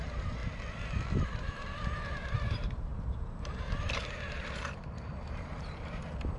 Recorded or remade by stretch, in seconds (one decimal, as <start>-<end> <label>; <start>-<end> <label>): 0.0-0.4 remade; 0.4-1.2 recorded; 1.2-6.4 remade